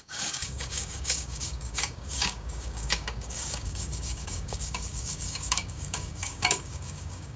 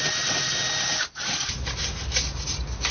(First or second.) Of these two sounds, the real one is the second